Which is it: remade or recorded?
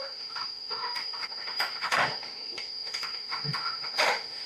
remade